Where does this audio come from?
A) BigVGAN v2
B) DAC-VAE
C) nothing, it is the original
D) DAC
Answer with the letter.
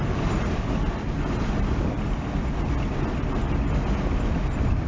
C